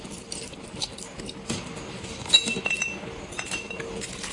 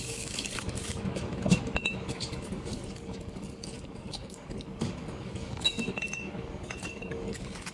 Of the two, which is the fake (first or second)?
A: second